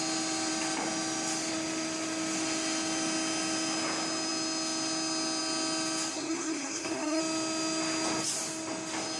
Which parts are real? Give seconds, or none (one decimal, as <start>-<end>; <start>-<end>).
0.0-6.1; 7.2-9.2